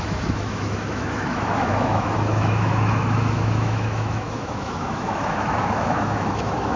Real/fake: fake